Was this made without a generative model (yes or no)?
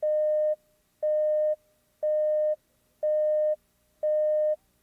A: yes